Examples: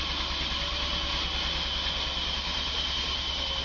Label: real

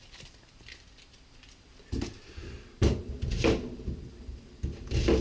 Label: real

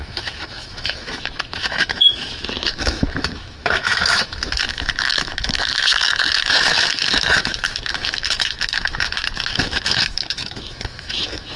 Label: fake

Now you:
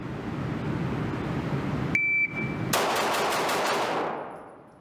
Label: real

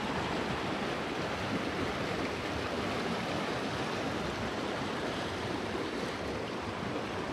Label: real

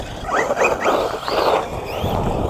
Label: real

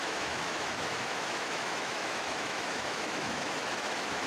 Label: fake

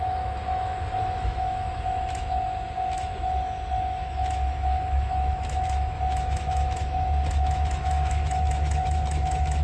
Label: fake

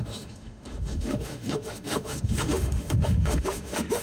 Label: fake